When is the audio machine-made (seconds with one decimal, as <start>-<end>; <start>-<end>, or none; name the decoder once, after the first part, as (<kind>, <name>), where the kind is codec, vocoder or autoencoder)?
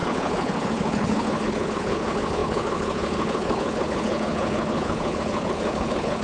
0.0-6.2 (codec, HILCodec)